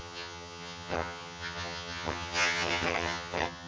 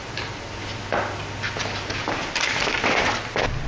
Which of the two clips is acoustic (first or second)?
second